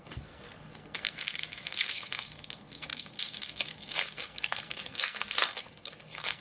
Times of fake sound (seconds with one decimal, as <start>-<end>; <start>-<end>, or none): 0.0-6.4